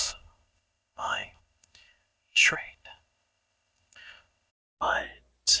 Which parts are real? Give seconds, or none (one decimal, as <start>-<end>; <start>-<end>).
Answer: 4.5-5.6